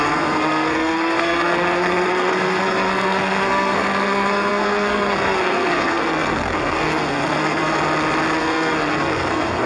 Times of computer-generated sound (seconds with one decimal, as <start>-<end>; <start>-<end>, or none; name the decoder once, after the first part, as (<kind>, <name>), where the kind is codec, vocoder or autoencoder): 0.0-7.8 (codec, SNAC); 8.4-9.7